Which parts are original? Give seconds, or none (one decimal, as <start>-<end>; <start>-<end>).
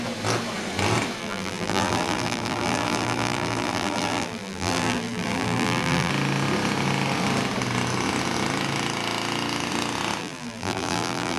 0.0-1.2; 6.1-10.2